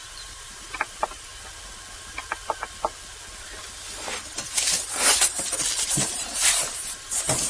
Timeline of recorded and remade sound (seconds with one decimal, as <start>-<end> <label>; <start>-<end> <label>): 0.0-1.3 remade; 1.3-5.8 recorded; 5.8-7.5 remade